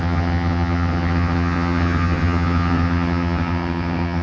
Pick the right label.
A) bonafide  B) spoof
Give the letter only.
B